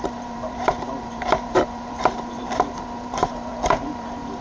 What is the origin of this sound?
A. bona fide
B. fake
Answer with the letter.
B